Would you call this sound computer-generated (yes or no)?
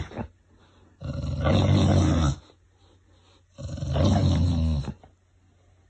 no